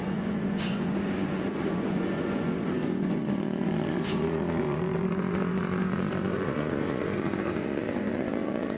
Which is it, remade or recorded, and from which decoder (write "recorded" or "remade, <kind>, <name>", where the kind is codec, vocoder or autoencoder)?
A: remade, vocoder, Vocos